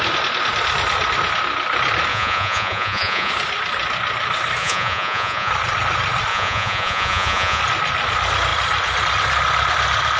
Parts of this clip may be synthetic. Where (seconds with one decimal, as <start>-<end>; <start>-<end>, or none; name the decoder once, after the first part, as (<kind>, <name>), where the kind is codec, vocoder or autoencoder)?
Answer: 2.1-3.3 (vocoder, Vocos); 4.6-5.5; 6.3-7.6